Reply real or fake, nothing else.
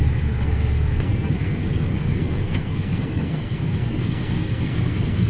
fake